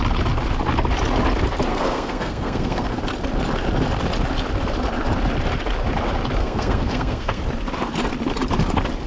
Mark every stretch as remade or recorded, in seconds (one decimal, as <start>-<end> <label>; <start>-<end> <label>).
0.0-1.7 recorded; 1.7-3.0 remade; 3.0-6.4 recorded; 6.4-7.4 remade; 7.4-9.1 recorded